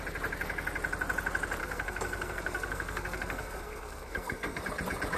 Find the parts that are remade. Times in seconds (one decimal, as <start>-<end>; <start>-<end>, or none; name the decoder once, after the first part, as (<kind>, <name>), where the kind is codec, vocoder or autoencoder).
1.6-4.6 (codec, SNAC)